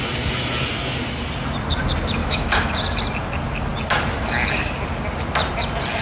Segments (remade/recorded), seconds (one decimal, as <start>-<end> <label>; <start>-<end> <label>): 0.0-2.2 recorded; 2.2-2.7 remade; 2.7-6.0 recorded